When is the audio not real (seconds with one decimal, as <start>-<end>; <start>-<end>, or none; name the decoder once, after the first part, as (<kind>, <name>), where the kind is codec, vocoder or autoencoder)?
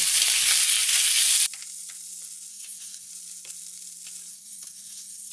2.5-3.1 (codec, SNAC); 4.3-5.3